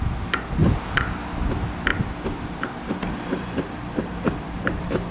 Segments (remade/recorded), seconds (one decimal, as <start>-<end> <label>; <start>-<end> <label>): 0.0-1.9 recorded; 1.9-5.1 remade